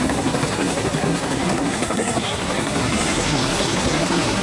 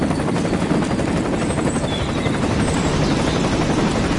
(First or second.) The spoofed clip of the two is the first